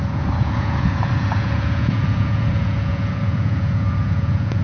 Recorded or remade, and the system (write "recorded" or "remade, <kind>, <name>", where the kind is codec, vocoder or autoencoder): remade, vocoder, Vocos